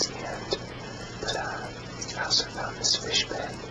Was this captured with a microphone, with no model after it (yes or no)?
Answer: no